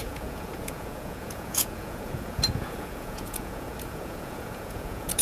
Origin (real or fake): fake